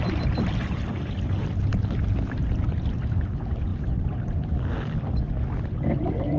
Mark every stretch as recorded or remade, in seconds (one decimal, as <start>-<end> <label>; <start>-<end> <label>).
0.0-6.4 recorded